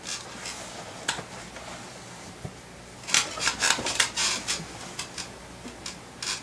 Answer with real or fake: real